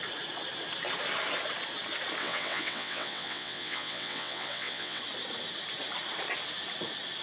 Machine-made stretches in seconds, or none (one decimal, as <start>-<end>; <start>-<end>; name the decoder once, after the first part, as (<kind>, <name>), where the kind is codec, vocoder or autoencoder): 2.2-5.0 (vocoder, WaveNeXt)